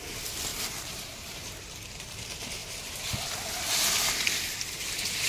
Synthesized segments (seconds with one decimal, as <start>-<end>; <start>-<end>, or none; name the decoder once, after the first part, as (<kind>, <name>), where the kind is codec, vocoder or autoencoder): 0.5-2.2 (vocoder, BigVGAN v2); 2.6-3.3

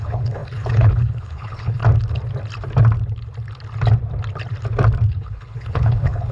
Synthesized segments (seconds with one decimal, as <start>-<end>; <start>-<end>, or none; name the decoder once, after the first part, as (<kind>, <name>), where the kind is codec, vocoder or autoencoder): 0.0-1.8 (codec, HILCodec); 5.1-6.3

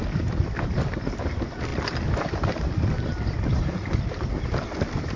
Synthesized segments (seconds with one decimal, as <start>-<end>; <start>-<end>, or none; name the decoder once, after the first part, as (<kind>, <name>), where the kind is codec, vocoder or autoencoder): none

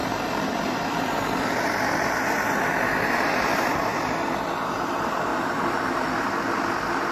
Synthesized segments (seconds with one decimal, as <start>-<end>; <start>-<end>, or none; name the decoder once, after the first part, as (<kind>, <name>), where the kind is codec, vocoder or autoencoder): 5.3-6.2 (vocoder, BigVGAN v2)

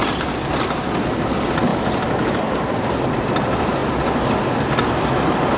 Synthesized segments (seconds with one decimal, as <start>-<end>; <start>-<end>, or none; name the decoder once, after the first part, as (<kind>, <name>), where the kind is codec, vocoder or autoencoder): 1.7-3.0 (vocoder, BigVGAN v2)

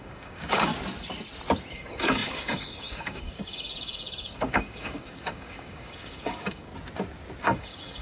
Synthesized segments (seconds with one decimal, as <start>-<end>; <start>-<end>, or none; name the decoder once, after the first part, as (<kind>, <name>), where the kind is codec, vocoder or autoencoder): 0.0-0.7 (codec, DAC); 1.7-6.7; 7.4-8.0